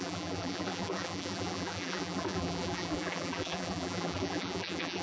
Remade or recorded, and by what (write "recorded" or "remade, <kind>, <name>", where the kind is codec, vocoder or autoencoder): remade, vocoder, BigVGAN v2